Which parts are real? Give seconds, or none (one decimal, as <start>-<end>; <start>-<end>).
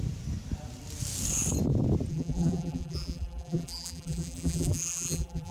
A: 0.0-2.1